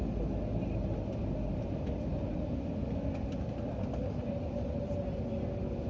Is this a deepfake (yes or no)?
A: no